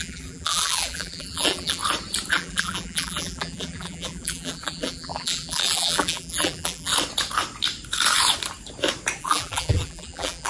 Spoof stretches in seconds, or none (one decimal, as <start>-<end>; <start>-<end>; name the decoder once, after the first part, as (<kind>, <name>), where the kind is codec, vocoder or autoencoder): 0.0-1.8 (vocoder, BigVGAN v2); 2.3-6.9; 9.2-10.5